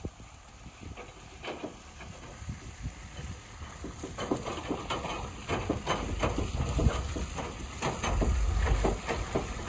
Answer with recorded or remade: recorded